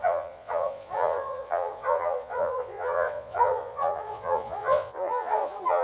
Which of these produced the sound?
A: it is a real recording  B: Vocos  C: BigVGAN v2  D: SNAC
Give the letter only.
B